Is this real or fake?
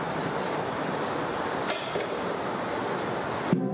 real